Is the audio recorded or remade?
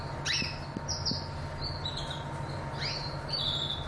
recorded